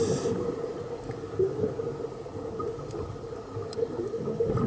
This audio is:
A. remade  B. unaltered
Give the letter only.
B